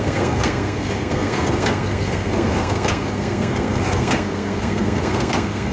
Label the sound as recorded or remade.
remade